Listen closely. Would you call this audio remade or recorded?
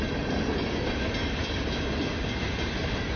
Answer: recorded